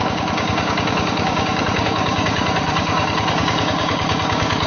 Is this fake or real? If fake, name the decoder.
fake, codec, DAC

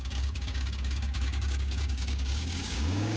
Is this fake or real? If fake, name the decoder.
fake, codec, DAC